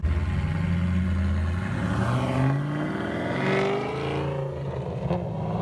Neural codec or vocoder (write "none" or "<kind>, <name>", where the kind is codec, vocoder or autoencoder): none